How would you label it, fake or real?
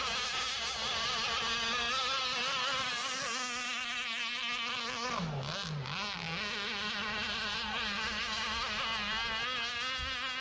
real